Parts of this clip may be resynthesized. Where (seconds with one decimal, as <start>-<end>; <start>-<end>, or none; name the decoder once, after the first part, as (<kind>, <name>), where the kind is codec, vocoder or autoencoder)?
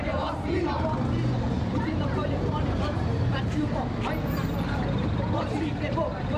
0.0-6.4 (vocoder, BigVGAN v2)